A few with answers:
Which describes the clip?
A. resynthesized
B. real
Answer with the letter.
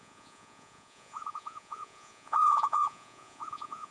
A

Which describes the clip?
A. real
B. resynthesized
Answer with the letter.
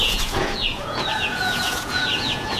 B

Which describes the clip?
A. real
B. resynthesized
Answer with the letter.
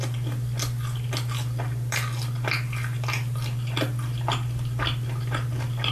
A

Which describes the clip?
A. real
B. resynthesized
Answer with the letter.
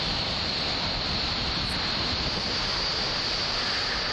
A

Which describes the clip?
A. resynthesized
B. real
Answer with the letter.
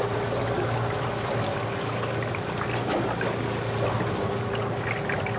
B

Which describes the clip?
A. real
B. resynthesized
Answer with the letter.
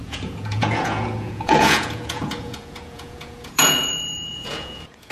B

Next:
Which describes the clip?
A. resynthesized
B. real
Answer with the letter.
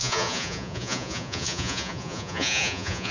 A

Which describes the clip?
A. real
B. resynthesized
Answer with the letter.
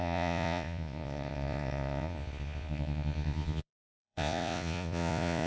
B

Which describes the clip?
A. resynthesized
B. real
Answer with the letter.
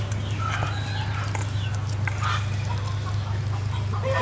B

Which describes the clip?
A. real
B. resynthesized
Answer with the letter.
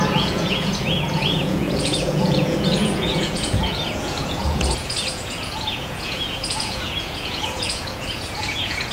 B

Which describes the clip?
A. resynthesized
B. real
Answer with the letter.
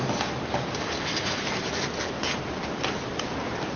B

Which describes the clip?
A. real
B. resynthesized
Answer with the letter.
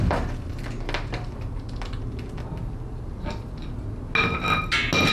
A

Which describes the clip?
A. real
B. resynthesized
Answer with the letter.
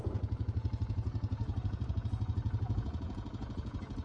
B